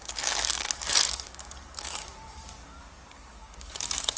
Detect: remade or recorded remade